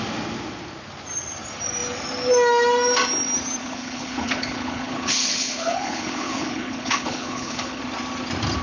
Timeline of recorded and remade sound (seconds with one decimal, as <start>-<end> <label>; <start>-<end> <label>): 0.0-3.6 recorded; 3.6-7.8 remade; 7.8-8.6 recorded